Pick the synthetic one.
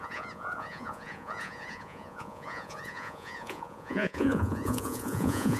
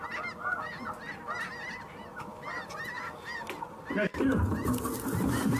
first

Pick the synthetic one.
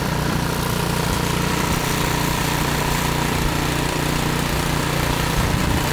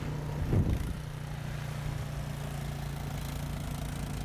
first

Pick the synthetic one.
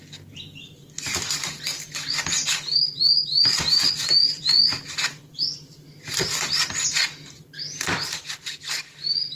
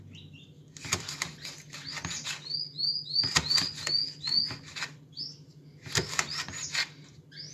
first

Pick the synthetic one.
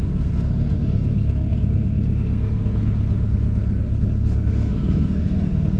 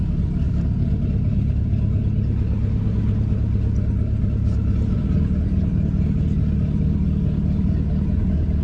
first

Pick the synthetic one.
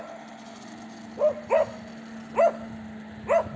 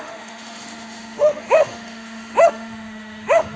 second